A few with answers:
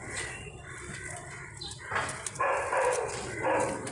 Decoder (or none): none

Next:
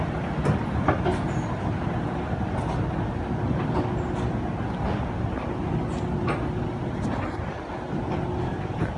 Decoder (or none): none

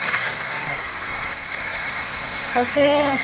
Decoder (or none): codec, SNAC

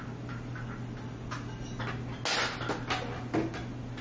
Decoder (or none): none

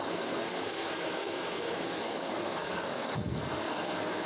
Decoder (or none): codec, SNAC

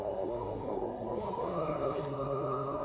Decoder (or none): codec, SNAC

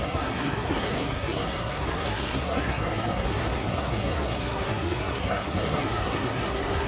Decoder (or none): codec, SNAC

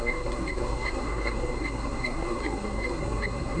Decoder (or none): codec, SNAC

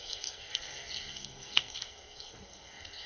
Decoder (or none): codec, SNAC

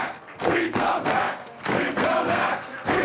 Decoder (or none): codec, SNAC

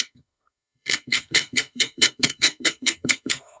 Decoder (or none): codec, SNAC